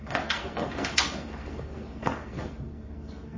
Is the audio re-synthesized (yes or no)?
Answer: yes